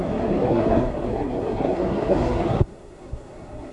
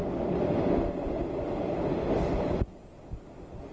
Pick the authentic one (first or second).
second